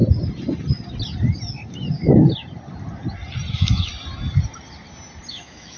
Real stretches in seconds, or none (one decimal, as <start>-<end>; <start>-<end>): 0.0-3.5; 3.9-5.3